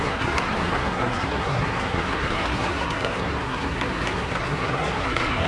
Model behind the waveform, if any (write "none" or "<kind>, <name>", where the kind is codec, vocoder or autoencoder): codec, SNAC